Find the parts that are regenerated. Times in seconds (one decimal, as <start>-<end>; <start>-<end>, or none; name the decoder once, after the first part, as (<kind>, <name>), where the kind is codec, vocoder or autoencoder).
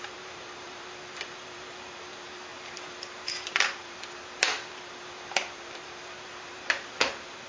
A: 0.0-7.5 (vocoder, BigVGAN v2)